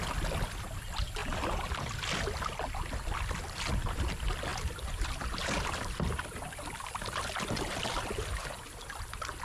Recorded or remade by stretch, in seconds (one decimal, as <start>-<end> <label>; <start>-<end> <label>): 0.0-1.2 recorded; 1.2-1.8 remade; 1.8-9.4 recorded